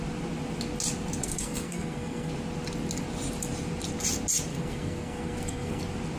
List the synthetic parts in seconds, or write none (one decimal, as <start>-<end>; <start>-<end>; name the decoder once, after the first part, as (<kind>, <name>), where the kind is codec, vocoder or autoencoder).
1.2-2.3 (codec, SNAC); 4.5-5.8